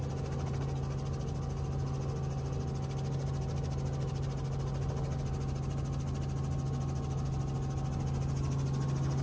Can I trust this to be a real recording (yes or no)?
yes